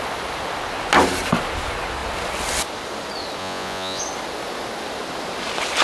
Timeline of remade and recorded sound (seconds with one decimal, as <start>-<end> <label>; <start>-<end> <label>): 0.0-3.4 recorded; 3.4-4.0 remade; 4.0-5.8 recorded

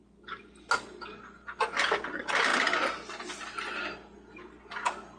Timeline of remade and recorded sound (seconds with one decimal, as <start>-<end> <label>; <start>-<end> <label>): 0.0-5.2 recorded